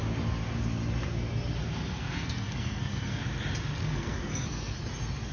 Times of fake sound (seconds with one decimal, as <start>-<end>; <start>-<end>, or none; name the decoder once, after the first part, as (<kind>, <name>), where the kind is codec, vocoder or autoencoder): 1.9-3.2 (codec, SNAC); 3.8-4.8